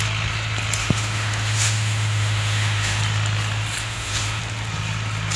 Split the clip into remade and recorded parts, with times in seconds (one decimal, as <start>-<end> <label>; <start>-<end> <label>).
0.0-0.8 recorded; 0.8-3.0 remade; 3.0-3.8 recorded; 3.8-4.4 remade; 4.4-5.4 recorded